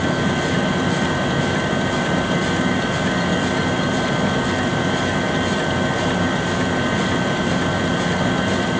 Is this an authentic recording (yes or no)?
yes